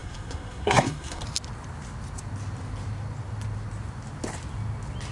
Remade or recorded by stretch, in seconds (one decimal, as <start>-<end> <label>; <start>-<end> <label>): 0.0-1.2 remade; 1.2-5.1 recorded